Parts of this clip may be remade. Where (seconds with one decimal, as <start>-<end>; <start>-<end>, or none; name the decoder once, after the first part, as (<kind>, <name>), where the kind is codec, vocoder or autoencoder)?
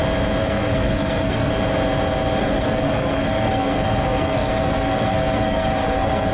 0.4-1.5 (codec, SNAC); 2.4-6.3